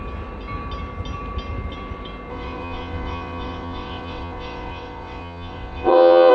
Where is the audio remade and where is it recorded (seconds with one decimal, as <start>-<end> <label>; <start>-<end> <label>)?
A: 0.0-2.3 recorded; 2.3-6.3 remade